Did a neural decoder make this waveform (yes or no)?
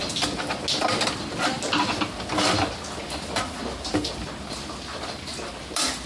no